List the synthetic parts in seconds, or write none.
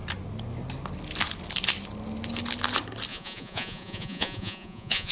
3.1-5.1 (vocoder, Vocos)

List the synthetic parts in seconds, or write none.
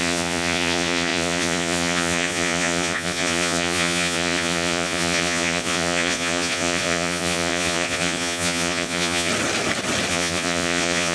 0.0-9.3 (vocoder, Vocos); 10.1-11.1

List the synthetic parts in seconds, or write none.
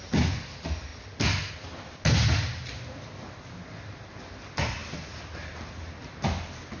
none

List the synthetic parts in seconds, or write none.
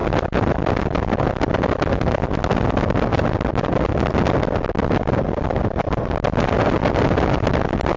none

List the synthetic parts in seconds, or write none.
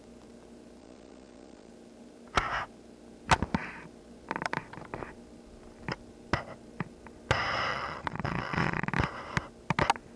0.8-1.7 (vocoder, Vocos); 7.7-8.9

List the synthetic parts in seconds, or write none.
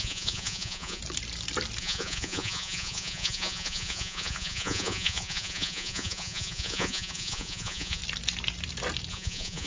0.0-1.0 (vocoder, Vocos); 1.8-8.0; 9.1-9.7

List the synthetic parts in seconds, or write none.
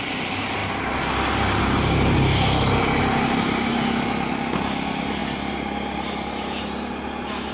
none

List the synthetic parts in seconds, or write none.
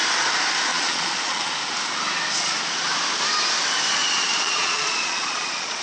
0.7-1.5 (vocoder, Vocos); 4.0-5.8